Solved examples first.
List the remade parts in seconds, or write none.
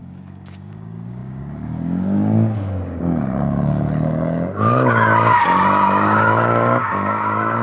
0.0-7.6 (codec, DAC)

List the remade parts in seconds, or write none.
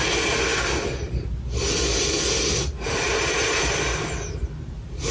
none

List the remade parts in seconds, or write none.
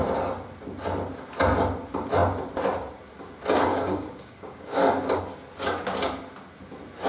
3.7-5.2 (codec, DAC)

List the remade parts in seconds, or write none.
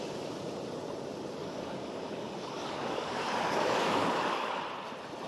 1.4-4.6 (codec, DAC)